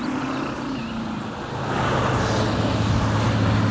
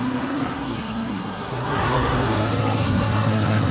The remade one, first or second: second